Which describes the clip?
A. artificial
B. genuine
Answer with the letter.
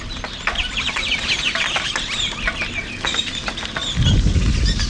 B